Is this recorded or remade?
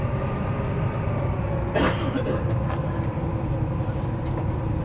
recorded